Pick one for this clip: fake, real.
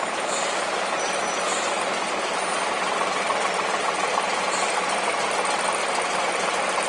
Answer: real